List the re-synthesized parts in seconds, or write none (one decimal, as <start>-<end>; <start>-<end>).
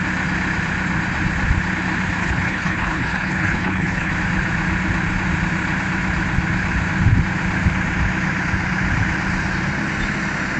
2.2-4.1